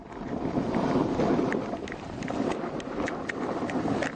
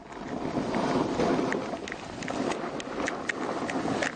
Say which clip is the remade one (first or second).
first